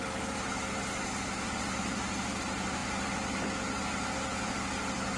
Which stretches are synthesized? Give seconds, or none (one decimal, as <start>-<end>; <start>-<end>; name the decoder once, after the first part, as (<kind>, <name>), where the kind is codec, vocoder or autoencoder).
none